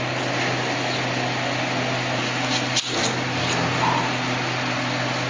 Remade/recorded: recorded